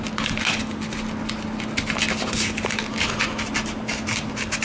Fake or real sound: real